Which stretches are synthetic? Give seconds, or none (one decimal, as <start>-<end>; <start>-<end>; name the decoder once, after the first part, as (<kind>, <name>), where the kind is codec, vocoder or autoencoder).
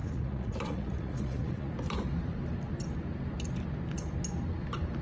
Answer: 0.0-1.7 (vocoder, Vocos)